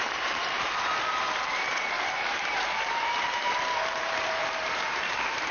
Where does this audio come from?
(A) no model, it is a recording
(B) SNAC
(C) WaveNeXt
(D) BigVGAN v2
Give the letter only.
D